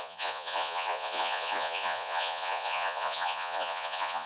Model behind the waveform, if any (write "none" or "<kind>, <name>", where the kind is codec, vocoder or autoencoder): vocoder, Vocos